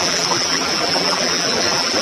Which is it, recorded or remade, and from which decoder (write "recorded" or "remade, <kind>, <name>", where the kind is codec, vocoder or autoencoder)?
remade, vocoder, BigVGAN v2